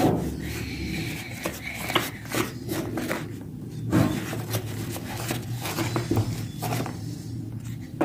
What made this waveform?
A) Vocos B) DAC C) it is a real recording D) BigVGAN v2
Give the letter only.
C